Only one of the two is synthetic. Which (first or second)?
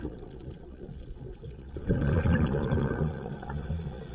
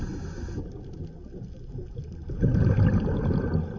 first